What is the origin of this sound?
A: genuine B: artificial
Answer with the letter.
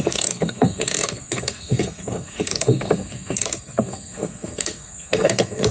B